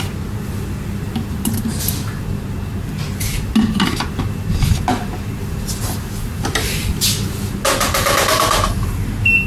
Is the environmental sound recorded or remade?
recorded